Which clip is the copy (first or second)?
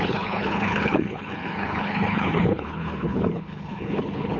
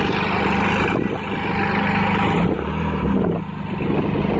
first